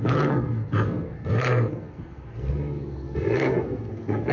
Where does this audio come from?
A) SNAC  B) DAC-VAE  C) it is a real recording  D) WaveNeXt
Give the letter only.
A